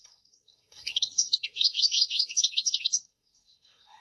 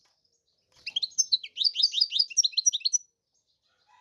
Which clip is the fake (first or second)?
first